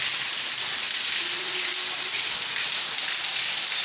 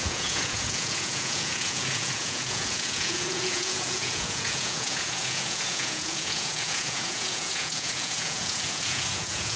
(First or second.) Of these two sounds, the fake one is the second